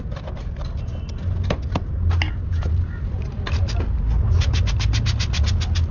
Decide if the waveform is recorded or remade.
recorded